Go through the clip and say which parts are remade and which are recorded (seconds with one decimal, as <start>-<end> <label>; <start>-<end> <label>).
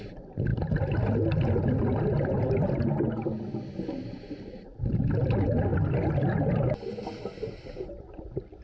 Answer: 0.0-8.6 recorded